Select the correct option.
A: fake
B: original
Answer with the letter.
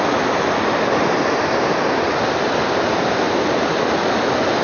B